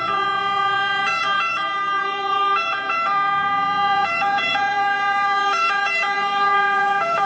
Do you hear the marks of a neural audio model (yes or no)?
yes